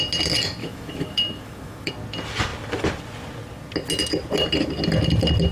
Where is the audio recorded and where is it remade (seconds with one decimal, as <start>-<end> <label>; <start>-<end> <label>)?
0.0-0.6 recorded; 0.6-1.9 remade; 1.9-5.5 recorded